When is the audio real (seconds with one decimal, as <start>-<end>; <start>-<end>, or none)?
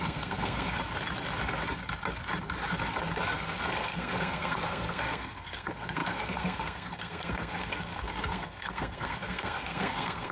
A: 0.8-3.7